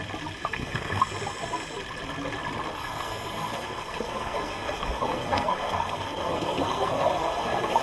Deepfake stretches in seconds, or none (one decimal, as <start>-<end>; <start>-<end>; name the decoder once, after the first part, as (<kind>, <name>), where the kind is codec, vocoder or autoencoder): 0.4-1.0 (codec, SNAC); 2.8-7.8